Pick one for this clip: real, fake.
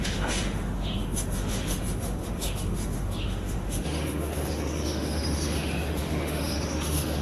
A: fake